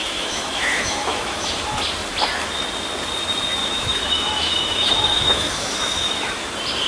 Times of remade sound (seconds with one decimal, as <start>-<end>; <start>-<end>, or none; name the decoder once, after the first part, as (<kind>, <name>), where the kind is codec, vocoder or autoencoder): 0.0-1.5 (autoencoder, DAC-VAE); 3.6-6.5